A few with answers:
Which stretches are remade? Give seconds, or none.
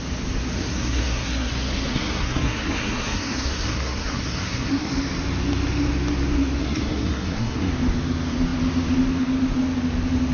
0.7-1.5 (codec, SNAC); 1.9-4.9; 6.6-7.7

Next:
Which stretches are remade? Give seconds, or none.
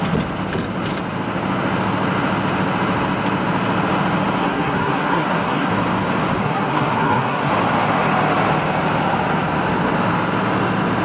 4.4-5.7 (codec, SNAC); 6.4-7.5